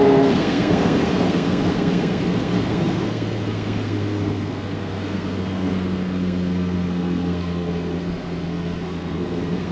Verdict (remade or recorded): remade